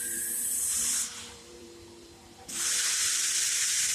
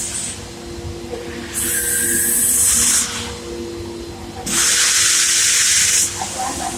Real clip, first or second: second